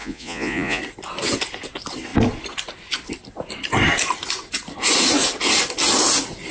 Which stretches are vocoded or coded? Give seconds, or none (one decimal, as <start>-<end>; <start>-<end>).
0.0-0.8